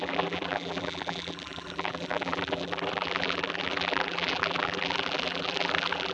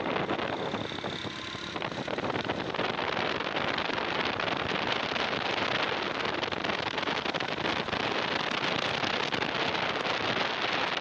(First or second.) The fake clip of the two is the first